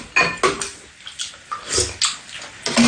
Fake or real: real